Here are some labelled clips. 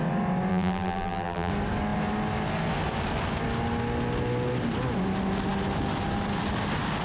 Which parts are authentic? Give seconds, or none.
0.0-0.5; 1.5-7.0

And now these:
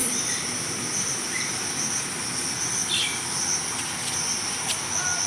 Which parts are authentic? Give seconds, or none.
1.8-5.3

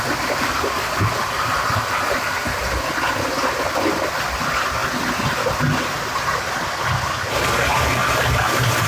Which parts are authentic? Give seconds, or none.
0.0-8.9